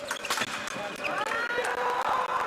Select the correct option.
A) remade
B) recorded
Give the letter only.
B